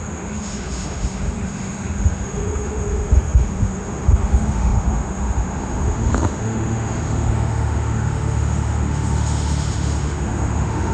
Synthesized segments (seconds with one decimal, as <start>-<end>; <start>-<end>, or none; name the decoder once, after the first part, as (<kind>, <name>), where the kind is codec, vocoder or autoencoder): 0.0-10.9 (autoencoder, DAC-VAE)